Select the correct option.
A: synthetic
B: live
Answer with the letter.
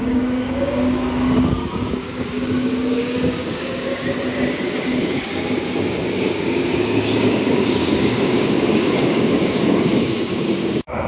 A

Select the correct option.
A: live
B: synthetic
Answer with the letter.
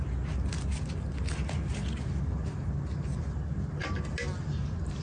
A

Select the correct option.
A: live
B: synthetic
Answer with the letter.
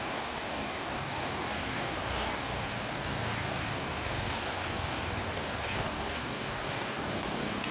B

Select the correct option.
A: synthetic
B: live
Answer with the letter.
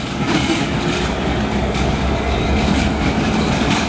A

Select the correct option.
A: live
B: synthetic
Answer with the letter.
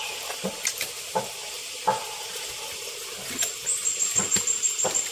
A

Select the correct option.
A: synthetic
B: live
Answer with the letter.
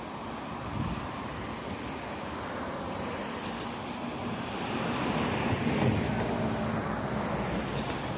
B